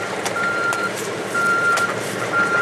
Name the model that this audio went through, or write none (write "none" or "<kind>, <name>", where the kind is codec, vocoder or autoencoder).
vocoder, BigVGAN v2